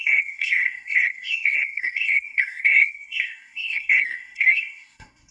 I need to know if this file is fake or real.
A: fake